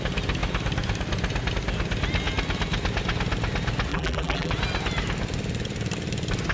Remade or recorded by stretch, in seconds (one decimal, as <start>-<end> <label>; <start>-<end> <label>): 0.0-3.9 recorded; 3.9-4.5 remade; 4.5-6.5 recorded